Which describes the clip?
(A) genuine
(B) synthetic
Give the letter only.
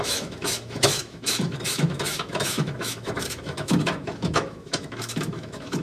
B